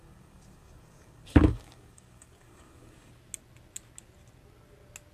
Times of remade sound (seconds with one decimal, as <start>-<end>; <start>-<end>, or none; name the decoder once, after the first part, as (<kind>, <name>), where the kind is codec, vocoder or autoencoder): 0.0-3.1 (codec, DAC)